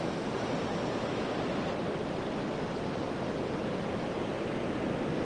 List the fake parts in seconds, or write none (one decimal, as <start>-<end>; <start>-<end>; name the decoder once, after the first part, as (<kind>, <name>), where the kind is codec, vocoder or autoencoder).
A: 3.6-4.4 (vocoder, BigVGAN v2)